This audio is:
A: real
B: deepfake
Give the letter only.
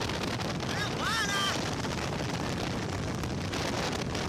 A